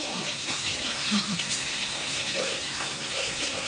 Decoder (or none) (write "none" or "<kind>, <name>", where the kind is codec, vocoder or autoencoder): codec, SNAC